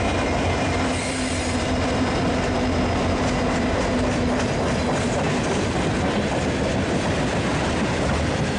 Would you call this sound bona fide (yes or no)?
no